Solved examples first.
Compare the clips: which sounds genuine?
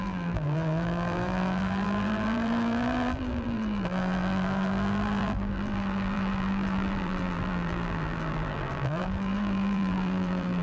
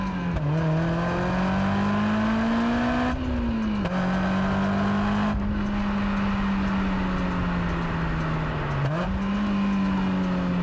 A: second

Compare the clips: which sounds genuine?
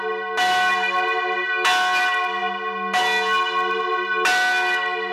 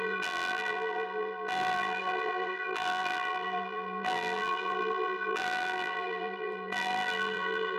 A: first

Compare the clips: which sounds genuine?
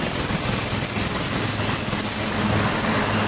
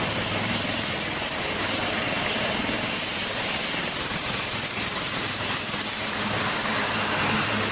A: first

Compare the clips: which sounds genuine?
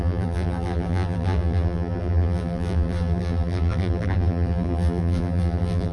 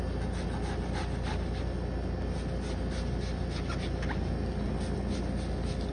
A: second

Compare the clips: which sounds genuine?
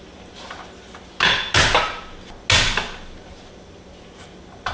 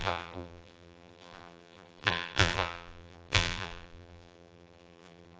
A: first